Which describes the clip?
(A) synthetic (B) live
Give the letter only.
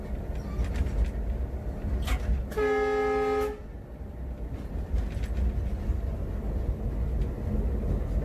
B